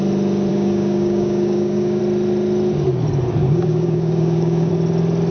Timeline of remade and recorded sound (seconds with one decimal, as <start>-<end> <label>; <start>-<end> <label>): 0.0-0.5 recorded; 0.5-2.0 remade; 2.0-3.4 recorded; 3.4-4.7 remade; 4.7-5.3 recorded